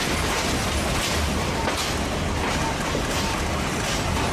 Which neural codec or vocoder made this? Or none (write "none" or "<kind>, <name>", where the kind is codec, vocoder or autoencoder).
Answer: none